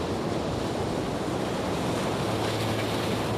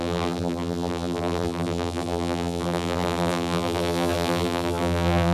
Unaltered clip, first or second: first